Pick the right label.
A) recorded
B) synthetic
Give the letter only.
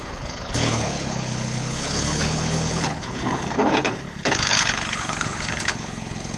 B